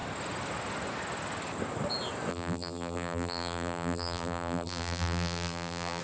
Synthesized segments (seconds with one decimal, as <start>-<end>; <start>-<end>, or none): 2.3-6.0